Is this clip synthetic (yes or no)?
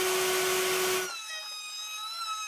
no